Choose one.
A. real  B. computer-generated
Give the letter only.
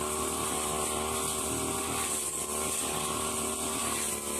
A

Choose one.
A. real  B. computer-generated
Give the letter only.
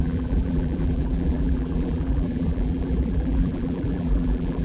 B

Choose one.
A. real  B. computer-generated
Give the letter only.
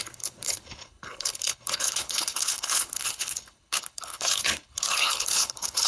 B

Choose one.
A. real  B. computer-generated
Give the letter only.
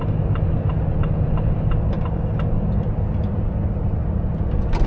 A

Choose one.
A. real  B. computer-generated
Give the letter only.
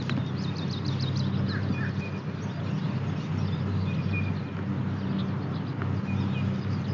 A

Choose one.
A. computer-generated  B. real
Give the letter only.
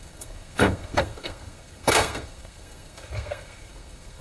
A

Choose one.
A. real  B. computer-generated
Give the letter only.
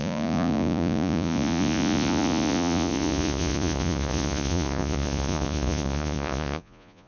B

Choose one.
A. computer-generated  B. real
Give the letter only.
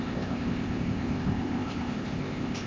A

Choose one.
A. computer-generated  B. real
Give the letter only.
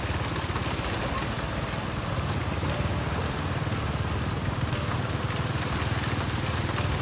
B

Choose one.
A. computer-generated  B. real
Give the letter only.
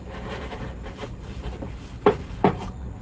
A